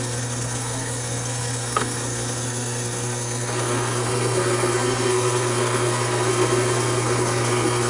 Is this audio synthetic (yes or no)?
yes